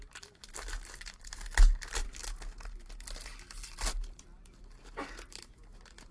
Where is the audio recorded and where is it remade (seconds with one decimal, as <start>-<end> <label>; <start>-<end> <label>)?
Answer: 0.0-6.1 recorded